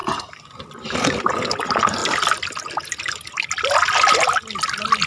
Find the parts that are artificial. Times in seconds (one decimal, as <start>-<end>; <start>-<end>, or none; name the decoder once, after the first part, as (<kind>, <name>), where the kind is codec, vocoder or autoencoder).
none